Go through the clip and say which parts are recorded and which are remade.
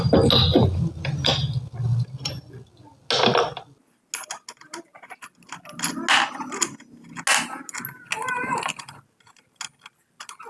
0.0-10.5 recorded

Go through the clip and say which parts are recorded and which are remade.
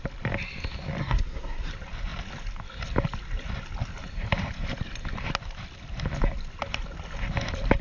0.0-1.0 recorded; 1.0-1.7 remade; 1.7-7.8 recorded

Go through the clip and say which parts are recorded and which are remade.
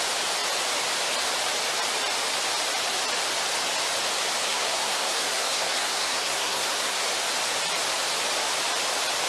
0.0-4.5 recorded; 4.5-7.0 remade; 7.0-9.3 recorded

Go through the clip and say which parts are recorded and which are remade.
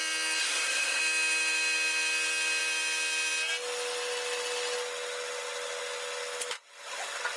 0.0-0.4 recorded; 0.4-1.0 remade; 1.0-7.4 recorded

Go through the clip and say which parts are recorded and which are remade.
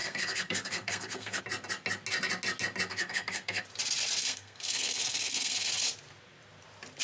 0.0-1.4 remade; 1.4-2.9 recorded; 2.9-3.6 remade; 3.6-4.2 recorded; 4.2-5.7 remade; 5.7-7.0 recorded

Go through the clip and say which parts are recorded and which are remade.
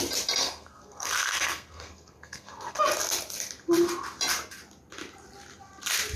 0.0-0.4 recorded; 0.4-2.8 remade; 2.8-6.2 recorded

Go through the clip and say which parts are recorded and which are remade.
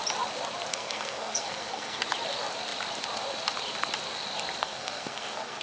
0.0-0.7 recorded; 0.7-2.0 remade; 2.0-4.6 recorded; 4.6-5.6 remade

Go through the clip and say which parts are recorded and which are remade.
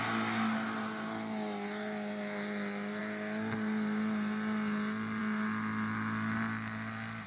0.0-7.3 recorded